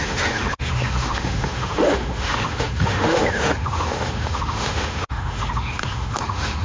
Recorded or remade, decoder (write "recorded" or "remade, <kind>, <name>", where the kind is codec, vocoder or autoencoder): remade, autoencoder, DAC-VAE